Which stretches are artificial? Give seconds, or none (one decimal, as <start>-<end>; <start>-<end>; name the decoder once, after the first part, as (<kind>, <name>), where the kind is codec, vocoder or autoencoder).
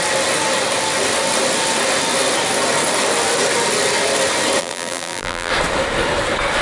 4.6-5.5 (vocoder, BigVGAN v2)